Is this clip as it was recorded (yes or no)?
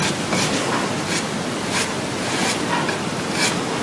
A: yes